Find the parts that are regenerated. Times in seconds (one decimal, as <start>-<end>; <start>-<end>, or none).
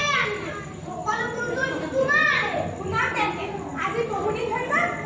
none